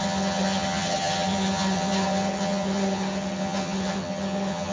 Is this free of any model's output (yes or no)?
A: no